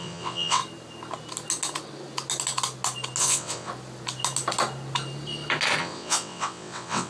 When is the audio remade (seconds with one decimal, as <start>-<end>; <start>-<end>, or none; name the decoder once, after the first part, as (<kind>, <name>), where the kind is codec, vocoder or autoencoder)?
0.0-0.6 (vocoder, WaveNeXt); 3.2-3.7; 5.8-7.1